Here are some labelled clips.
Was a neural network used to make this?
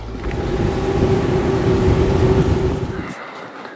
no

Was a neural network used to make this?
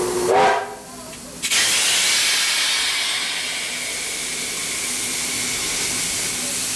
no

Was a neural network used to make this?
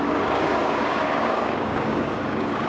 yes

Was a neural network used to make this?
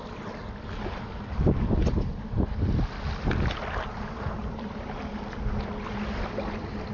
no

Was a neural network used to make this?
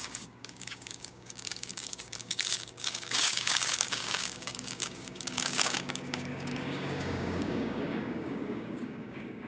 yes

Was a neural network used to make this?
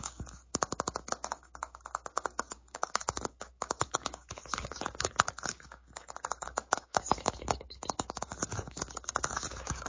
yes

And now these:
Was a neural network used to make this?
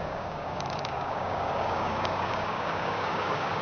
yes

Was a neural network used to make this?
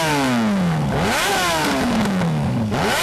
yes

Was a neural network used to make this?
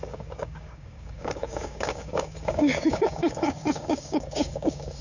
yes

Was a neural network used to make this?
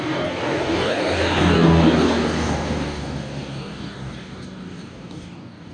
yes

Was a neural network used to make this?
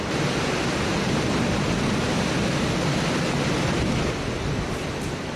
no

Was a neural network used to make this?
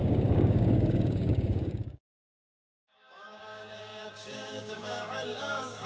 yes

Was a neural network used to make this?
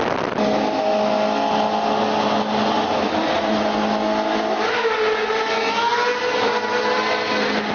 no